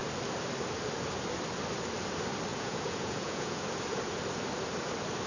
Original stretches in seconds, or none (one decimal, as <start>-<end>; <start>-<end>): 0.0-2.5; 3.6-5.3